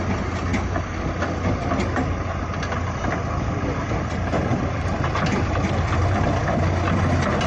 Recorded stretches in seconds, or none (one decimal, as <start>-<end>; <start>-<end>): 0.0-7.5